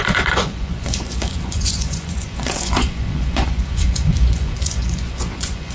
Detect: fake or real fake